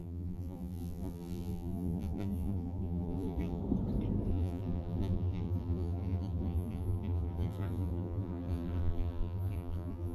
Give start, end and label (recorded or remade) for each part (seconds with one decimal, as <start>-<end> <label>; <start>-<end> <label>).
0.0-3.6 remade; 3.6-4.3 recorded; 4.3-10.1 remade